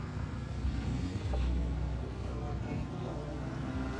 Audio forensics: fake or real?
fake